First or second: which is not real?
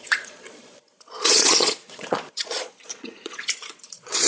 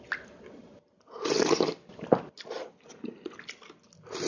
first